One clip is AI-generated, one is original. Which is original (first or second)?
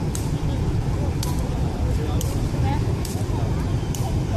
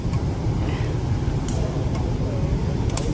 second